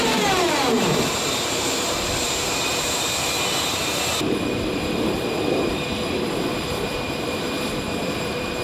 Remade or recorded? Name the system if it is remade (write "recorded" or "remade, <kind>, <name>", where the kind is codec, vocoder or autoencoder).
remade, vocoder, BigVGAN v2